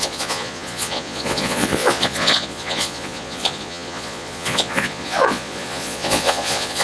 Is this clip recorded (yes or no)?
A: no